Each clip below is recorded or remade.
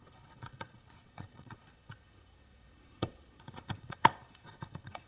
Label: remade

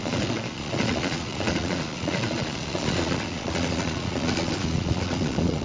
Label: remade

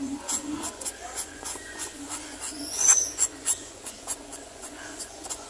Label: remade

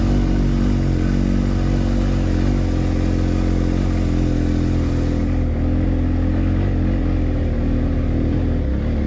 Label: recorded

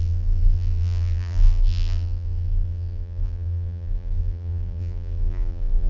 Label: remade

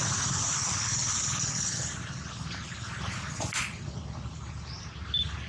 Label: recorded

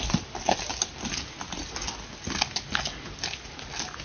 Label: recorded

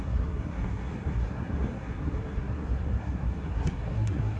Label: remade